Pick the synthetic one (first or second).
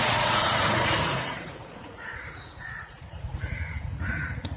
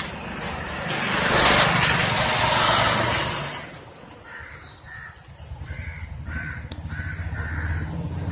first